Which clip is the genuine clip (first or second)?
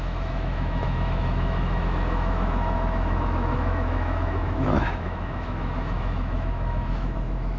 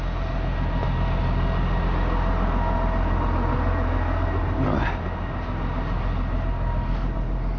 second